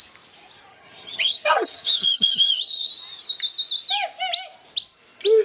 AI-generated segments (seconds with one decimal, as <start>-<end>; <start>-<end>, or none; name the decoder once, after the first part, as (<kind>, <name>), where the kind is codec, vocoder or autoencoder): 0.7-2.9 (vocoder, HiFi-GAN)